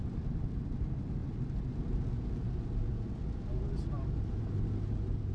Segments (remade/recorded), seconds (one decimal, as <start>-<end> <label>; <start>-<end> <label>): 0.0-5.3 recorded